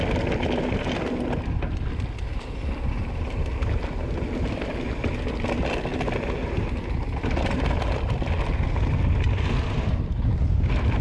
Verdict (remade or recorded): recorded